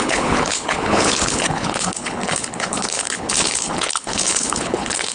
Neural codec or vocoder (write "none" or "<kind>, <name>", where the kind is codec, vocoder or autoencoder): codec, HILCodec